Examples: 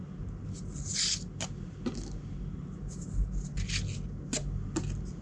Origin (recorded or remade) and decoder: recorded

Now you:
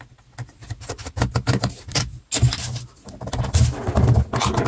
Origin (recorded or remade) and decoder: recorded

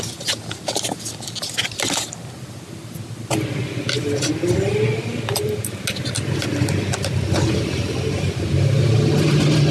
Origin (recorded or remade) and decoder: recorded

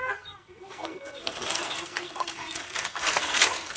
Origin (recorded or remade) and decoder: remade, codec, SNAC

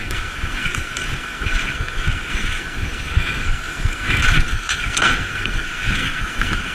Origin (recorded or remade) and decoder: remade, codec, SNAC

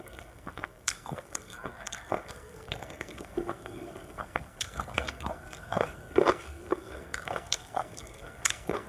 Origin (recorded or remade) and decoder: remade, codec, SNAC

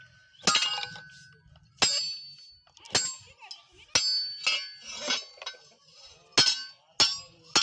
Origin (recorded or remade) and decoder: recorded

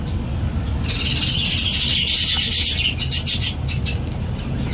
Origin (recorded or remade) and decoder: recorded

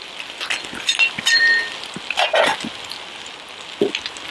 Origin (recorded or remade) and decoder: recorded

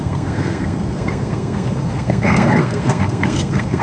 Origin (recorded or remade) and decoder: remade, codec, SNAC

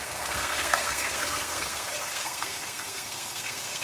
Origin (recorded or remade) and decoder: remade, codec, SNAC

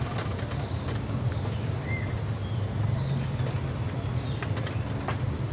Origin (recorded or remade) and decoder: recorded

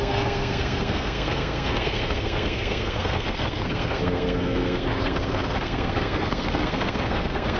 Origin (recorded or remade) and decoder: remade, codec, SNAC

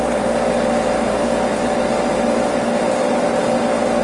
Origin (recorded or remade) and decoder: recorded